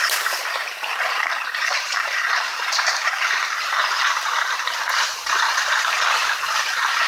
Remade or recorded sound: remade